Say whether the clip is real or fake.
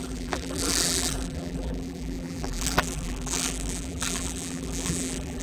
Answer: fake